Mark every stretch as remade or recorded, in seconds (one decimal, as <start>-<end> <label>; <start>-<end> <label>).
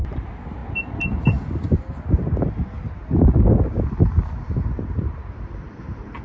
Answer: 0.0-6.2 recorded